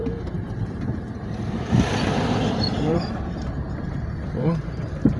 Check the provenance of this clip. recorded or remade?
remade